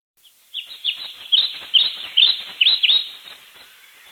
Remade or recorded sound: remade